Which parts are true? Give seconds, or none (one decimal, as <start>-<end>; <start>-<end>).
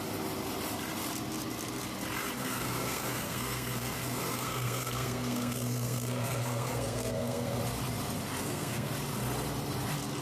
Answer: 0.0-2.4; 7.6-8.4; 8.9-10.2